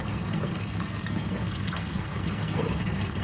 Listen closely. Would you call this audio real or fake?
fake